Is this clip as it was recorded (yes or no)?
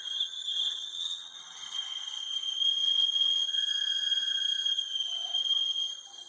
no